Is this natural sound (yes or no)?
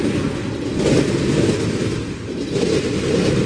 yes